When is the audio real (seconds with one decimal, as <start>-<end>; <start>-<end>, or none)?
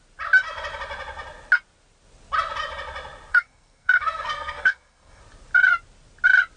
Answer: 0.0-3.3; 5.2-6.6